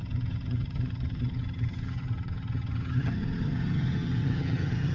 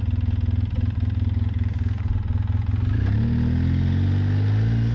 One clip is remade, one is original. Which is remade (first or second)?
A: first